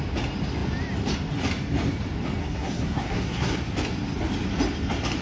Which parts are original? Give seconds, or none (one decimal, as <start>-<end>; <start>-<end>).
0.0-2.4; 3.6-5.2